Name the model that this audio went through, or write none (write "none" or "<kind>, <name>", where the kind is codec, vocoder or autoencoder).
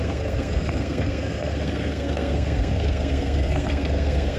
codec, SNAC